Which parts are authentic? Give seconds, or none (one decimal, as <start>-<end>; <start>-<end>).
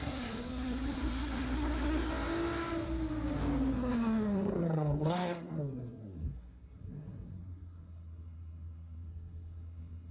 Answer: 2.1-3.7